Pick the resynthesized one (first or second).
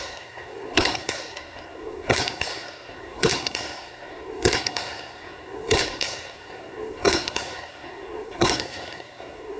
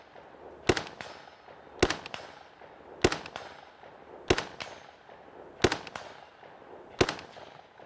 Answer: first